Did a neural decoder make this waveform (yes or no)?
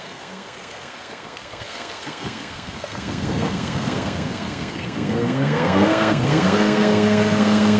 yes